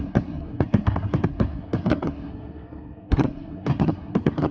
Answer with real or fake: fake